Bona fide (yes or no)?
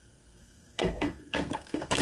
no